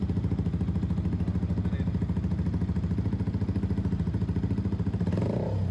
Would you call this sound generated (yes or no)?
no